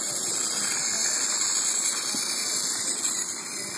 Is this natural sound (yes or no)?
yes